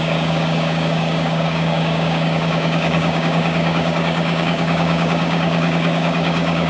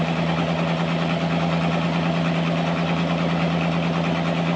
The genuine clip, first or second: second